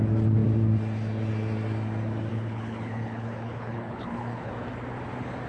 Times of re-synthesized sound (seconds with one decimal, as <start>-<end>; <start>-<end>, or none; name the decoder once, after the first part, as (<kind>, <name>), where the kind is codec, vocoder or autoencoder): 2.3-4.5 (codec, HILCodec)